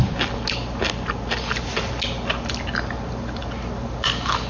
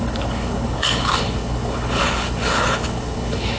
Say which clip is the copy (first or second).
second